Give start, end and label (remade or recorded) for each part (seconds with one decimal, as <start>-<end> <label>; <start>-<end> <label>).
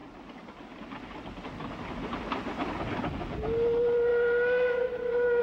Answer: 0.0-5.4 recorded